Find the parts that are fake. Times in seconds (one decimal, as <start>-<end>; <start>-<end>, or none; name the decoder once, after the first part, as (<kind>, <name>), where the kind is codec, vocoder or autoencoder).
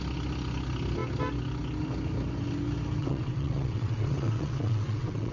3.0-5.3 (vocoder, WaveNeXt)